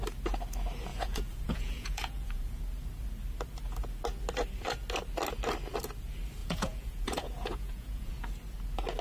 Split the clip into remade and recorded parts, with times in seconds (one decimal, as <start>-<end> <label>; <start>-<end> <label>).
0.0-0.9 recorded; 0.9-2.6 remade; 2.6-6.4 recorded; 6.4-8.1 remade; 8.1-9.0 recorded